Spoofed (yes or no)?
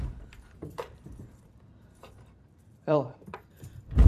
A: yes